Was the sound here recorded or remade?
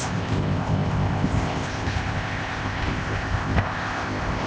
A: remade